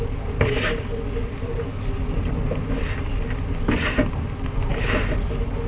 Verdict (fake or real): real